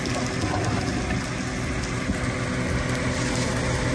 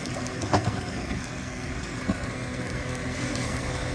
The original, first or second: first